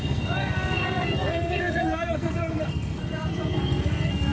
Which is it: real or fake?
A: fake